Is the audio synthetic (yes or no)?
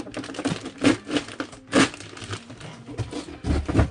no